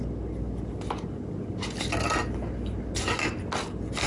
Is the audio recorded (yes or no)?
yes